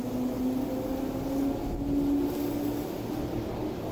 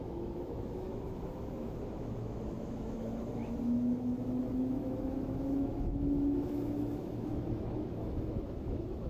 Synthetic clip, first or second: second